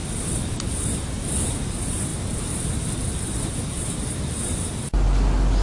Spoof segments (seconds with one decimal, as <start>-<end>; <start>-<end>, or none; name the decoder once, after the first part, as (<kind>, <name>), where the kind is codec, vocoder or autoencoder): 0.0-1.7 (vocoder, BigVGAN v2); 2.1-3.6